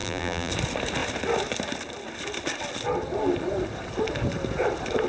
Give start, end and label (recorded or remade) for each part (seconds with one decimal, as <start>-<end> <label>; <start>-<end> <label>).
0.0-0.5 remade; 0.5-5.1 recorded